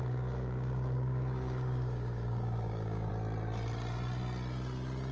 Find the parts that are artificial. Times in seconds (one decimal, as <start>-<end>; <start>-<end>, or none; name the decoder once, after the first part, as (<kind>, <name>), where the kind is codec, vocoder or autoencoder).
0.0-3.1 (codec, DAC)